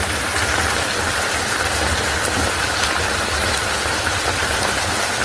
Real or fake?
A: real